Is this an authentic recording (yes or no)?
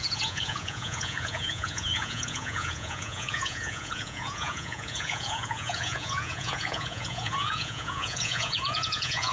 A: no